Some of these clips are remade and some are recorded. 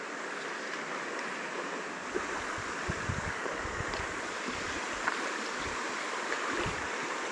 recorded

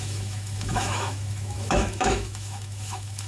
remade